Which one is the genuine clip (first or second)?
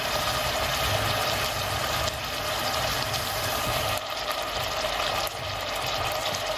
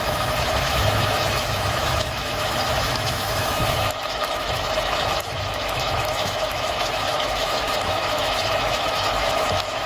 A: first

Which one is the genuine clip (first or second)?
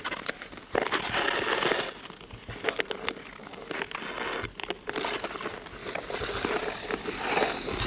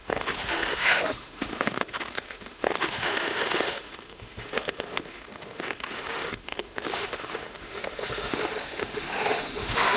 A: first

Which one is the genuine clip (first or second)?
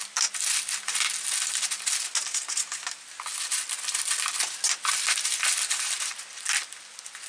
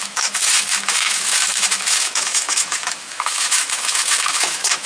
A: first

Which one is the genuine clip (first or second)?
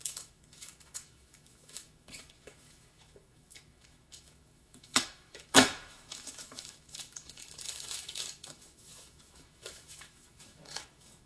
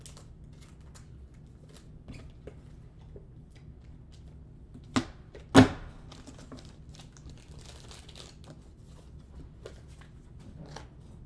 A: second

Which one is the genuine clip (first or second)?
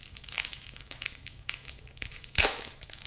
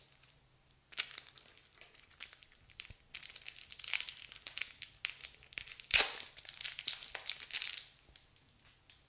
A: second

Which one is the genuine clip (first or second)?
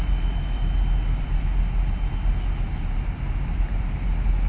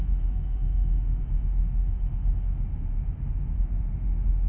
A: first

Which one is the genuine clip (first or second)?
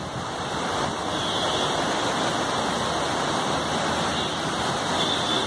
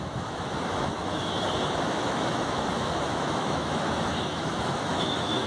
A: first